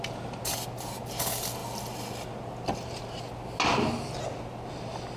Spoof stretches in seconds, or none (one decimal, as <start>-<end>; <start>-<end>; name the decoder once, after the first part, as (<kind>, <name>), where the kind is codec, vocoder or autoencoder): none